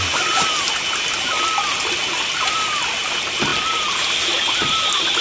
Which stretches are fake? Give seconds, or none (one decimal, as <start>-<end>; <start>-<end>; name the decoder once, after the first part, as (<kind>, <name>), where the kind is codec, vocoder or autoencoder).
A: none